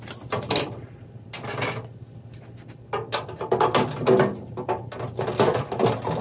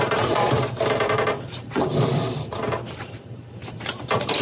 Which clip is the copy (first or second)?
second